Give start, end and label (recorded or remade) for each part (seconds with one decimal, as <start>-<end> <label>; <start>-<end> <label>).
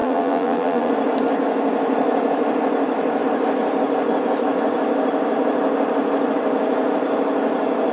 0.0-0.9 remade; 0.9-7.9 recorded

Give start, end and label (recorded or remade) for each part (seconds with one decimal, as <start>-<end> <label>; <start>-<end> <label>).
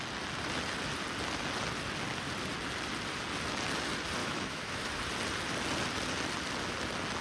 0.0-4.2 recorded; 4.2-4.9 remade; 4.9-7.2 recorded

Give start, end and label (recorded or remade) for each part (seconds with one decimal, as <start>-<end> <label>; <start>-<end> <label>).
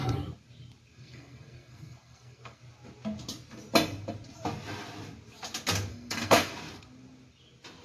0.0-0.9 recorded; 0.9-2.6 remade; 2.6-5.9 recorded; 5.9-6.5 remade; 6.5-7.8 recorded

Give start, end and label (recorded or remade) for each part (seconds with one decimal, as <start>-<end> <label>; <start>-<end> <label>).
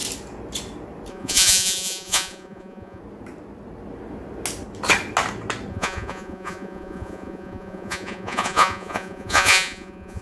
0.0-1.1 recorded; 1.1-3.0 remade; 3.0-5.7 recorded; 5.7-10.2 remade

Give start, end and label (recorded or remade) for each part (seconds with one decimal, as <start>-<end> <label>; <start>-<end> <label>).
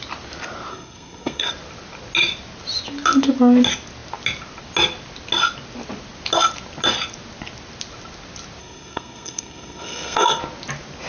0.0-0.7 recorded; 0.7-1.5 remade; 1.5-8.6 recorded; 8.6-10.4 remade; 10.4-11.1 recorded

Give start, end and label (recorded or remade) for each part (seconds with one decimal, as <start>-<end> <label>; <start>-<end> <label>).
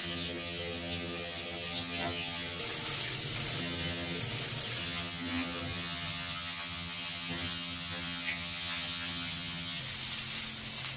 0.0-2.6 remade; 2.6-3.6 recorded; 3.6-4.2 remade; 4.2-4.8 recorded; 4.8-9.8 remade; 9.8-11.0 recorded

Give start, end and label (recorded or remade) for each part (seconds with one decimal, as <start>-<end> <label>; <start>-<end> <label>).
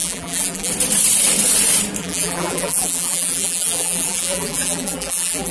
0.0-0.7 remade; 0.7-2.0 recorded; 2.0-5.5 remade